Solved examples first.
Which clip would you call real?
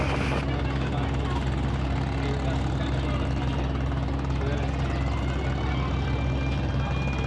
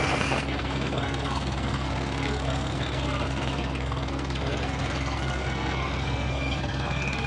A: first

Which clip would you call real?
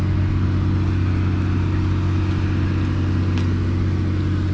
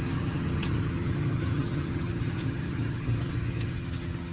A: first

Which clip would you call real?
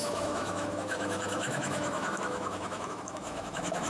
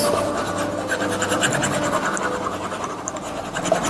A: second